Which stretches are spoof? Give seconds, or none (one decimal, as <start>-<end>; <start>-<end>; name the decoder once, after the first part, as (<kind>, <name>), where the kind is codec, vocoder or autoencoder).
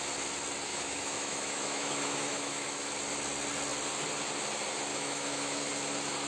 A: 0.7-2.9 (autoencoder, DAC-VAE); 4.9-5.7